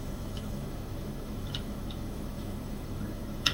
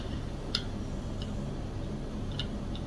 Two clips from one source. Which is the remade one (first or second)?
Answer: first